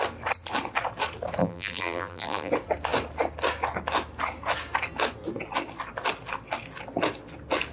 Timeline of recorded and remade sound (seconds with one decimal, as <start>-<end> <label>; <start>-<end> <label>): 0.0-1.4 recorded; 1.4-2.5 remade; 2.5-7.7 recorded